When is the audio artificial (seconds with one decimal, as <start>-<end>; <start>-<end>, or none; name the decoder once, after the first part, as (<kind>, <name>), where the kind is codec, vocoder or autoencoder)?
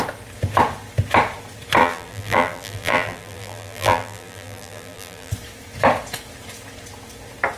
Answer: 1.8-5.3 (vocoder, BigVGAN v2)